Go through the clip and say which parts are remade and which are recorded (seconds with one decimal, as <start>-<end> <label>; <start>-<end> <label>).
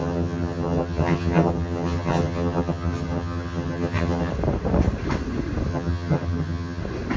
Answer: 0.0-4.3 remade; 4.3-5.7 recorded; 5.7-6.8 remade; 6.8-7.2 recorded